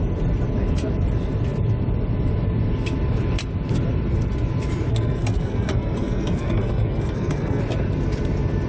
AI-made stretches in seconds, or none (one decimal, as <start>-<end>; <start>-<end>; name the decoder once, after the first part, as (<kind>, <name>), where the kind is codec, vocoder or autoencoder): 4.9-7.6 (codec, SNAC)